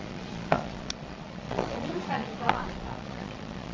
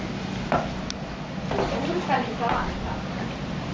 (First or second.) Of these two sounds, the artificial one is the first